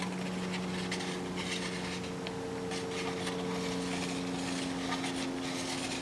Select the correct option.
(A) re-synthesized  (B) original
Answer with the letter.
B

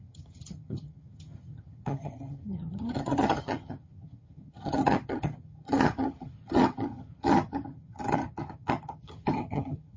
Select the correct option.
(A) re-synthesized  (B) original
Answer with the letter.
A